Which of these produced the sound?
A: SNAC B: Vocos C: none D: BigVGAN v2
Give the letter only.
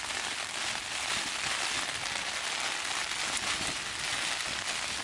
C